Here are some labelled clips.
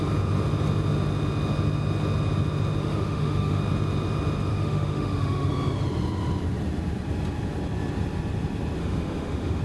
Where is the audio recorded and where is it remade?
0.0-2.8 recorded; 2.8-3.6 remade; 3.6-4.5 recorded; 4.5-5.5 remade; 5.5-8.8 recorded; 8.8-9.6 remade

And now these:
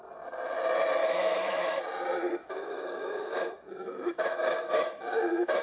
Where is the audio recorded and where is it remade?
0.0-1.0 recorded; 1.0-1.8 remade; 1.8-2.4 recorded; 2.4-5.6 remade

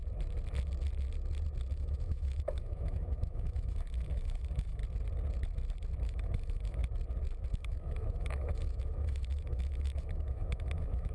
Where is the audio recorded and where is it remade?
0.0-1.7 recorded; 1.7-4.8 remade; 4.8-6.0 recorded; 6.0-6.8 remade; 6.8-7.5 recorded; 7.5-11.1 remade